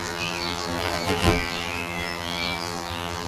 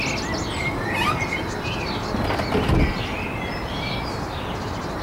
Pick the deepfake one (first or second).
first